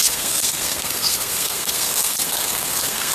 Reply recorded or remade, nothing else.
remade